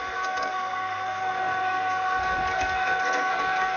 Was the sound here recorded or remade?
remade